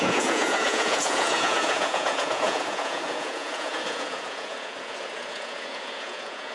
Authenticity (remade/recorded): remade